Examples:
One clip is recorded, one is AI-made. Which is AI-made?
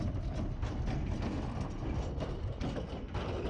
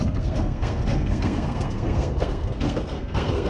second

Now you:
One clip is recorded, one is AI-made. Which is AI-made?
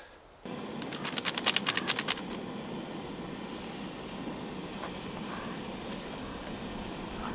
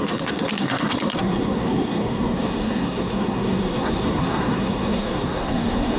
second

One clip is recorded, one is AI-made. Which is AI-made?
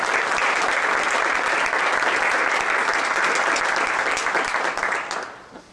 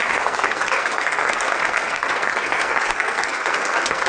second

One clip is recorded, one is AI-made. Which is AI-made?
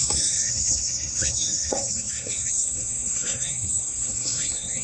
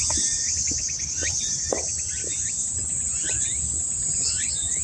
first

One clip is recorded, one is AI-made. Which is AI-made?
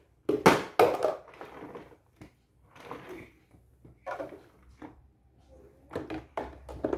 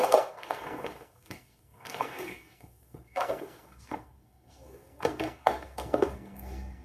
second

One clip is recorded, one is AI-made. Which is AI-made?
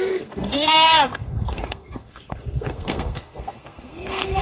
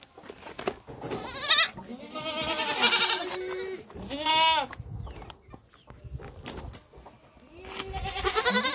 first